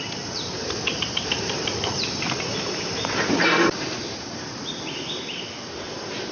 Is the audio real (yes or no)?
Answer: no